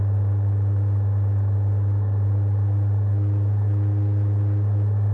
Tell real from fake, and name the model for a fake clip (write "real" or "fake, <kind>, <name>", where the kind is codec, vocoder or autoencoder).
real